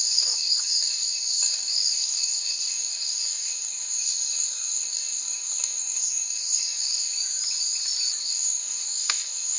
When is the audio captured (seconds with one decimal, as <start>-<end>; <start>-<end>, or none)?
7.1-8.2